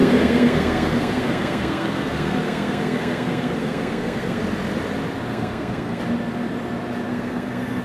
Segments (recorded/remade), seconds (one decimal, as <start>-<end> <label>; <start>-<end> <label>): 0.0-4.4 remade; 4.4-5.3 recorded; 5.3-6.0 remade; 6.0-7.1 recorded; 7.1-7.8 remade